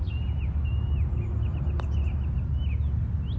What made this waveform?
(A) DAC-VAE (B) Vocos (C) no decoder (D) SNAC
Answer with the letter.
C